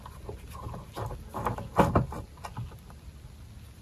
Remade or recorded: recorded